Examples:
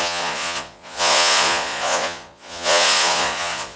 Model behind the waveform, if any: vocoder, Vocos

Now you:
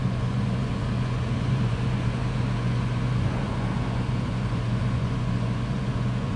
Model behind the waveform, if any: vocoder, Vocos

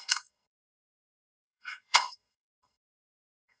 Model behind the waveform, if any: codec, SNAC